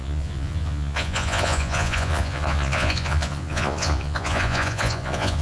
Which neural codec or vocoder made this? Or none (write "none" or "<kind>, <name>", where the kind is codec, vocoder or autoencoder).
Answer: vocoder, Vocos